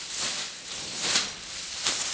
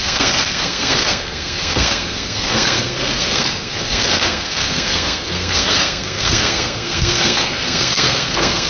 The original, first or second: first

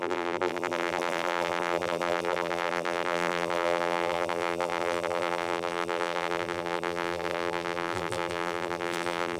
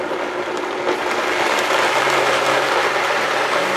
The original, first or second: second